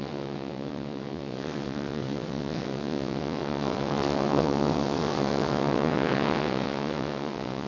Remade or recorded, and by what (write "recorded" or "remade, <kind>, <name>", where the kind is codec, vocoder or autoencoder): remade, vocoder, WaveNeXt